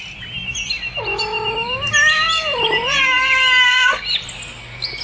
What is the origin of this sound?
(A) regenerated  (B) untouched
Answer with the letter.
B